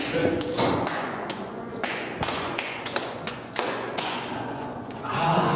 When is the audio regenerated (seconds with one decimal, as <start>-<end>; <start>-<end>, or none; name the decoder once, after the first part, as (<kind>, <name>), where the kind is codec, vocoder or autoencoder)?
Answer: 0.0-5.6 (vocoder, Vocos)

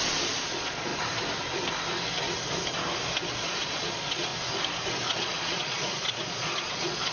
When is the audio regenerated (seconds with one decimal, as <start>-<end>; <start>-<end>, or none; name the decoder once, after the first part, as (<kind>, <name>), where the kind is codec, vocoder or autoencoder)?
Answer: 0.0-0.9 (vocoder, Vocos); 3.4-4.3; 5.0-7.1

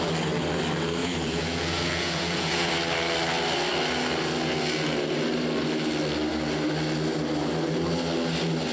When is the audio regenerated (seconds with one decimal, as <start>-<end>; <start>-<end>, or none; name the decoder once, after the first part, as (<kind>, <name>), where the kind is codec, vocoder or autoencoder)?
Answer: 1.0-2.7 (vocoder, Vocos)